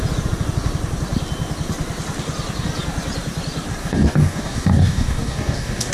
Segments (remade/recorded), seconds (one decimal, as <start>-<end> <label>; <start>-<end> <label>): 0.0-3.8 recorded; 3.8-5.9 remade